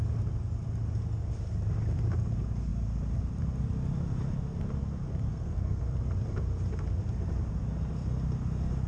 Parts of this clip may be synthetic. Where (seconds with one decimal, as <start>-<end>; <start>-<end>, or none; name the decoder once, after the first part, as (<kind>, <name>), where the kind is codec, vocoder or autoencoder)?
5.3-5.8 (codec, SNAC)